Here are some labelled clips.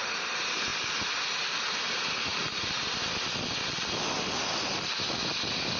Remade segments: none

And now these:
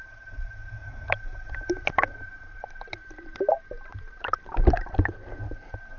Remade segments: 0.8-3.5; 3.9-5.3

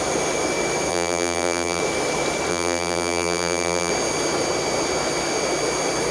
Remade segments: 0.9-1.8; 2.5-3.9

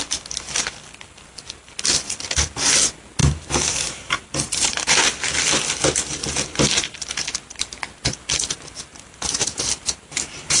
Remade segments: 3.2-5.2; 6.2-7.6; 8.9-10.6

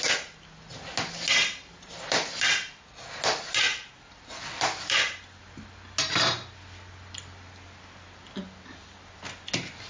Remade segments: 1.4-2.5; 3.7-5.4

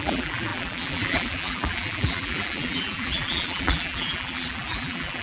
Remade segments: 0.0-5.2

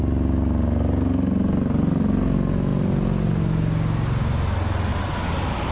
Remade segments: 4.9-5.7

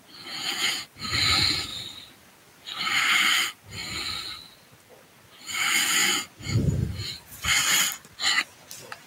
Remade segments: none